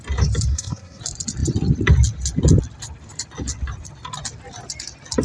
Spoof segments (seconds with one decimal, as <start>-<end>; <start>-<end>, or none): 0.5-1.0